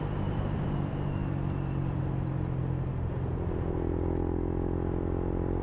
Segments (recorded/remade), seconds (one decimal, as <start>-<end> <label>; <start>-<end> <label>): 0.0-5.6 recorded